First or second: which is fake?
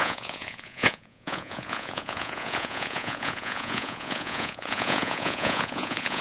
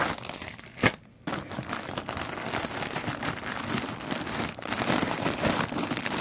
first